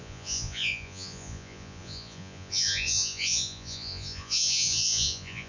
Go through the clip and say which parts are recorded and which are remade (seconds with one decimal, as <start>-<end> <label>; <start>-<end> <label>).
0.0-5.5 remade